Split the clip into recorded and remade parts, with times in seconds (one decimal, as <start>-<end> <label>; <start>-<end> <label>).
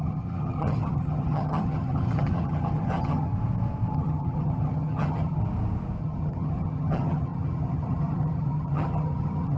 0.0-3.3 remade; 3.3-3.9 recorded; 3.9-5.4 remade; 5.4-6.0 recorded; 6.0-9.6 remade